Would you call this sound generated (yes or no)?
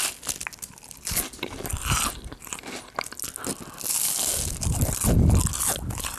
no